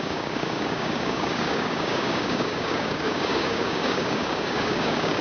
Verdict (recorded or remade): remade